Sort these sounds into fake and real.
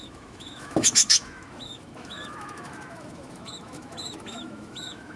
fake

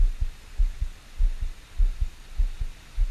real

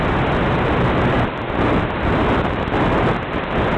real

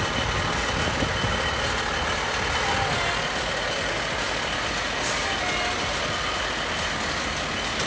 real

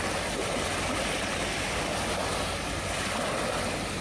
real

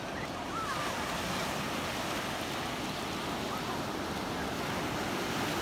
real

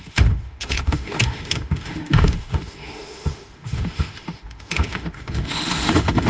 fake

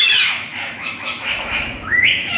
fake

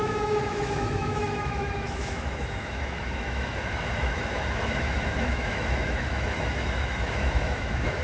fake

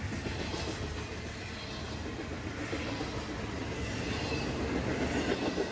real